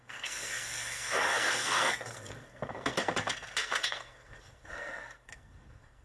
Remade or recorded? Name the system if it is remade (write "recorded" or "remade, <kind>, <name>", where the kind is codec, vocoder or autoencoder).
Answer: remade, codec, SNAC